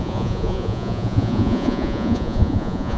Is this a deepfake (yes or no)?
yes